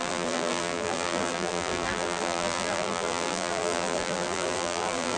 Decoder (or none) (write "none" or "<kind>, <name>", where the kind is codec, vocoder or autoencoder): vocoder, BigVGAN v2